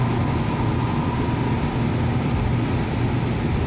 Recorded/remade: recorded